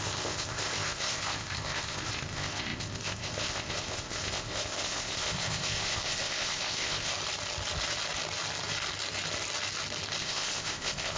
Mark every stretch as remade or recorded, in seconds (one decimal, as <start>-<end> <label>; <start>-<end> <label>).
0.0-7.1 remade; 7.1-10.2 recorded; 10.2-11.2 remade